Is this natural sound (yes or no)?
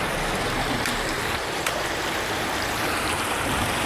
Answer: no